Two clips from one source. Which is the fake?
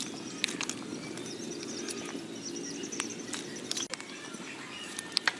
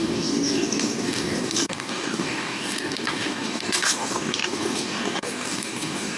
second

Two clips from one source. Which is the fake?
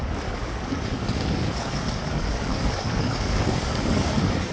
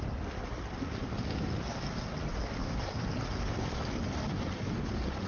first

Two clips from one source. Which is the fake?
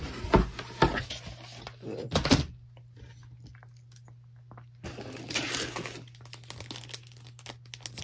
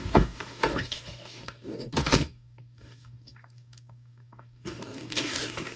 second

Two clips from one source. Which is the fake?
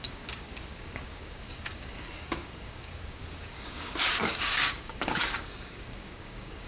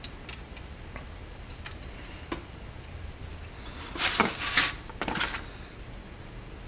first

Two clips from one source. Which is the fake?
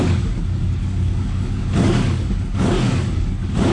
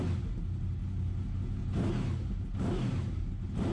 first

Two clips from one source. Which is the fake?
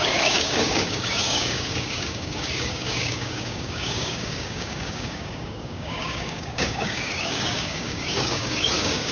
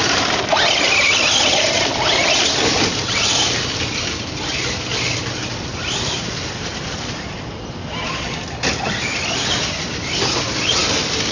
first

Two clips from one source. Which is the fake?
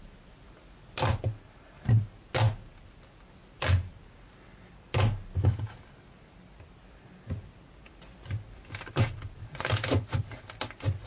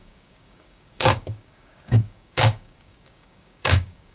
second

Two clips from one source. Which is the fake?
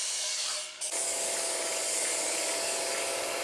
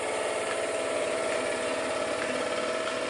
first